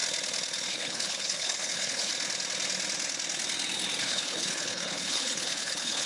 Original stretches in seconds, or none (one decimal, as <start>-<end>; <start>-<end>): 0.0-0.7; 2.1-4.0